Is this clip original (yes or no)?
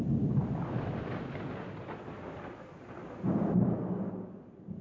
yes